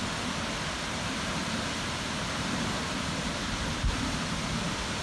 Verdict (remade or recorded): remade